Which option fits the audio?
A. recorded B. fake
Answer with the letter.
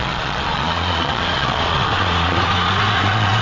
B